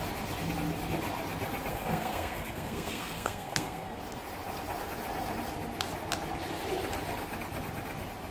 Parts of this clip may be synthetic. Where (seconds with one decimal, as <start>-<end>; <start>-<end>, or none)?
1.7-4.0